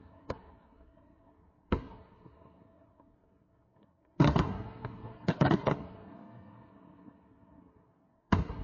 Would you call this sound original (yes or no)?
no